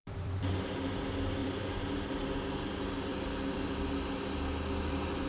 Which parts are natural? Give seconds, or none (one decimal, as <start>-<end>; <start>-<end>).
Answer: 0.9-1.4; 2.1-3.1; 3.8-5.3